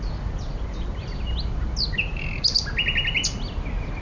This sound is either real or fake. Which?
real